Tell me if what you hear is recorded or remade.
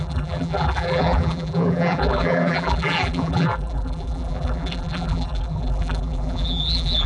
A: remade